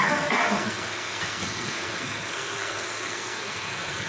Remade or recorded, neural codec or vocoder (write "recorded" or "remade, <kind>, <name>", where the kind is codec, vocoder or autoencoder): remade, codec, SNAC